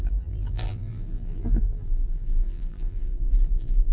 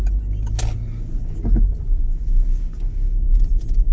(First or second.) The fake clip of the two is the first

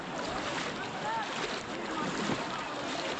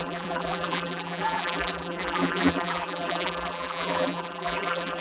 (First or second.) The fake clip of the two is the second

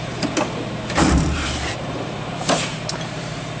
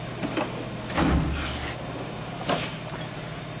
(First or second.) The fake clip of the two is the first